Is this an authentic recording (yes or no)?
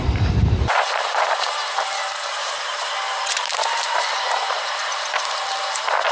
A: no